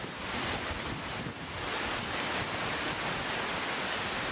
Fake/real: real